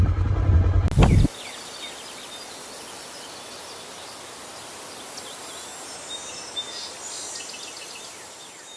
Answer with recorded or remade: recorded